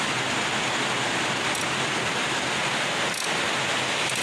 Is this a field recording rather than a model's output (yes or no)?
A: yes